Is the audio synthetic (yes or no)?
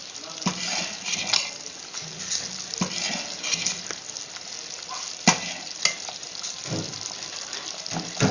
no